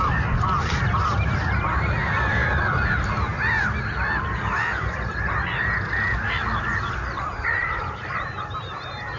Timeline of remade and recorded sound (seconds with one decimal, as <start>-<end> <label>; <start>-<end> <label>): 0.0-9.2 recorded